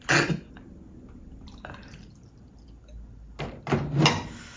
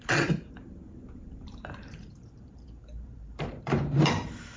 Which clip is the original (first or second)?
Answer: first